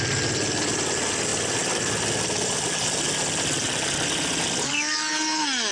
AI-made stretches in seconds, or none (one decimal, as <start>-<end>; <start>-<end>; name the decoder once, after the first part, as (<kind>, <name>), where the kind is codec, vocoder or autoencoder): none